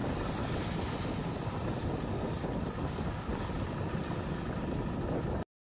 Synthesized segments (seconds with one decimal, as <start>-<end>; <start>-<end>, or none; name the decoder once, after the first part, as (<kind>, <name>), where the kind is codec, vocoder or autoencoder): none